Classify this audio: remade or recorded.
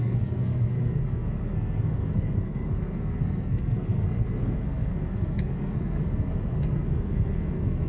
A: remade